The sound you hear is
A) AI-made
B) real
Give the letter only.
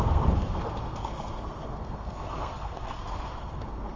A